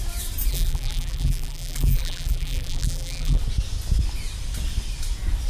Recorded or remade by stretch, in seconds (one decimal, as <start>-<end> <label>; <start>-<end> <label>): 0.0-0.5 recorded; 0.5-3.4 remade; 3.4-5.5 recorded